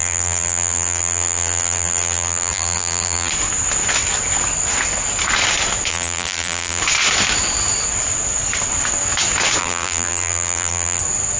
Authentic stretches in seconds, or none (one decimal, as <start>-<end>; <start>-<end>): 3.3-5.9; 6.8-9.6; 11.0-11.4

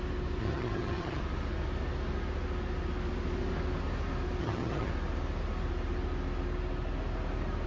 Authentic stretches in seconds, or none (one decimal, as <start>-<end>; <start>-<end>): 0.0-0.4; 1.2-4.4; 4.9-7.7

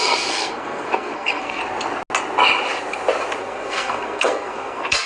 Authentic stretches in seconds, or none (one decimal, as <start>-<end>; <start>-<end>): 1.6-3.4

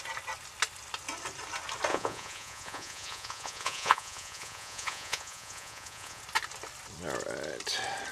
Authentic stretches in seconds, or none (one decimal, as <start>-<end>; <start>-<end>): 0.0-1.9; 6.2-8.1

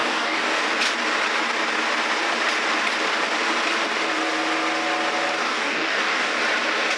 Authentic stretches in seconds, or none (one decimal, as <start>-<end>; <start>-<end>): 0.6-5.4; 6.4-7.0